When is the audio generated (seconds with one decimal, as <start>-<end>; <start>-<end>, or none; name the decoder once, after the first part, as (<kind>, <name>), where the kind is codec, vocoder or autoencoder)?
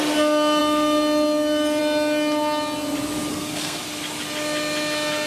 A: 3.3-3.8 (codec, SNAC)